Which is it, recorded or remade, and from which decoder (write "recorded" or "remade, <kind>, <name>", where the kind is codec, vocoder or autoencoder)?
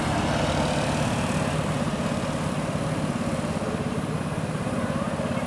recorded